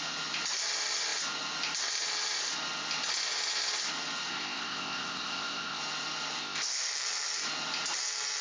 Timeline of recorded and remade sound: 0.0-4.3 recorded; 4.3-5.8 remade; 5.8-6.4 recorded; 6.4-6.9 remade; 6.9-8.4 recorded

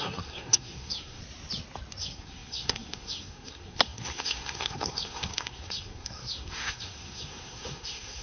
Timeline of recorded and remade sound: 0.0-1.2 remade; 1.2-2.0 recorded; 2.0-8.2 remade

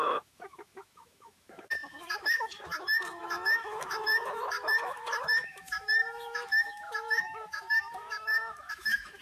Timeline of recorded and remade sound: 0.0-9.2 remade

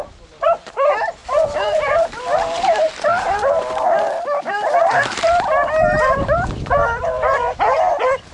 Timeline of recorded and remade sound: 0.0-8.3 remade